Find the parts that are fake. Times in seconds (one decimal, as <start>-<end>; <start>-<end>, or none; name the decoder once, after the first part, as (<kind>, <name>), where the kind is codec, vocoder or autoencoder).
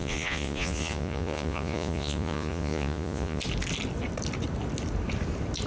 0.0-3.4 (vocoder, Vocos)